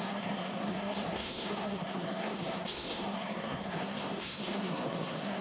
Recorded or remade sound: remade